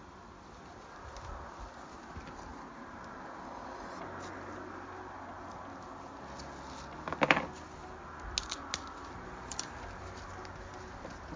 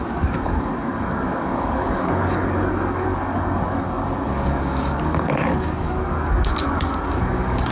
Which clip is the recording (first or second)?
first